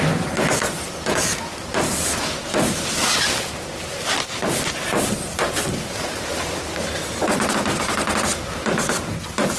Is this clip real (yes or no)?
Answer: no